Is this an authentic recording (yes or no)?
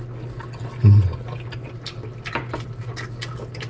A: yes